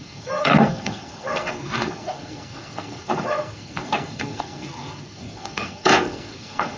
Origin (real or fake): fake